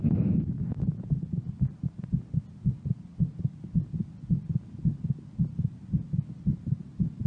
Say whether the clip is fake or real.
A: real